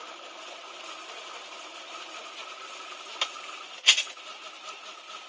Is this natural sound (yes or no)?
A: yes